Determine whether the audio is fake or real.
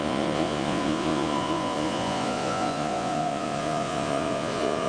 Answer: fake